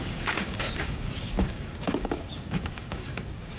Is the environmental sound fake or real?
fake